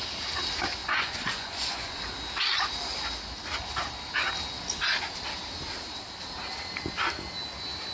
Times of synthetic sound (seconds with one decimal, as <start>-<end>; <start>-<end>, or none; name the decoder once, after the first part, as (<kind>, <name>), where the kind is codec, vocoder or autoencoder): 0.8-2.0 (vocoder, Vocos)